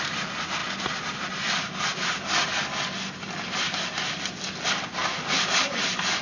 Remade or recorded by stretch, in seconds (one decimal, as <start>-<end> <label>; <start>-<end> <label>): 0.0-6.2 recorded